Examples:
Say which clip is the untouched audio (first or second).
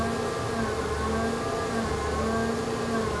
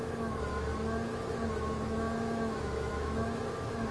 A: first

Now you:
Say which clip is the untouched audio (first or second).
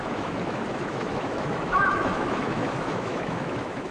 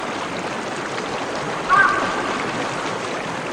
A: second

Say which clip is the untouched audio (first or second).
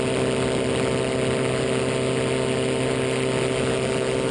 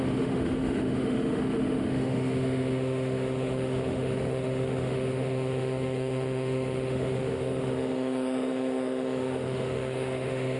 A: first